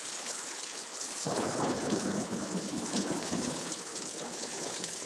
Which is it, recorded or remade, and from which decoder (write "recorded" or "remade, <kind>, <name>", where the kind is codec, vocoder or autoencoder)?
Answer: remade, codec, HILCodec